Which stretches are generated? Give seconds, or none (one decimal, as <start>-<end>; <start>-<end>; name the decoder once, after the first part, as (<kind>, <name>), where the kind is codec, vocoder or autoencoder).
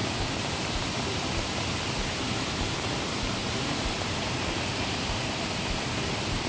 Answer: 3.4-5.4 (vocoder, BigVGAN v2)